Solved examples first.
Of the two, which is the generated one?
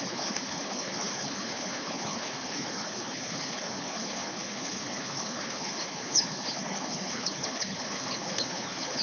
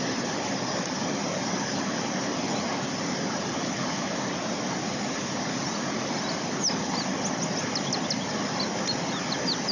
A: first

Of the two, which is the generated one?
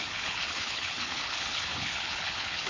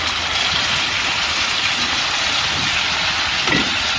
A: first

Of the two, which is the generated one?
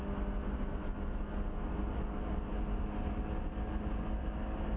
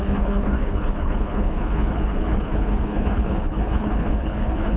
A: second